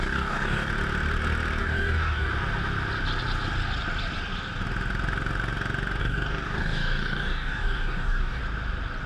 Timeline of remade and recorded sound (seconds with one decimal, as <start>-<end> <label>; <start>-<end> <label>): 0.0-0.7 remade; 0.7-1.6 recorded; 1.6-2.3 remade; 2.3-6.0 recorded; 6.0-8.4 remade; 8.4-9.1 recorded